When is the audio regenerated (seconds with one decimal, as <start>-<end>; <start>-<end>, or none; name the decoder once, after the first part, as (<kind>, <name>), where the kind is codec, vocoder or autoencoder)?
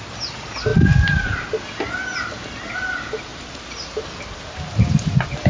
3.3-4.0 (vocoder, BigVGAN v2)